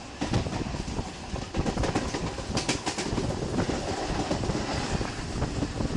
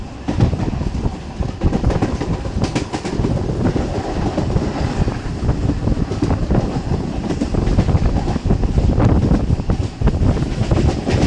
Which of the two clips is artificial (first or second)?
second